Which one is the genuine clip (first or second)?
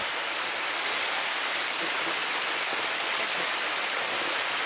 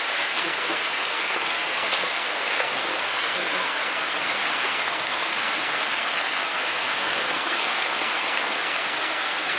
first